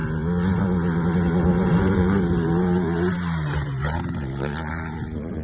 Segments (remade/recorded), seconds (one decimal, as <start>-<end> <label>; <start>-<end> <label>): 0.0-1.5 recorded; 1.5-4.7 remade; 4.7-5.4 recorded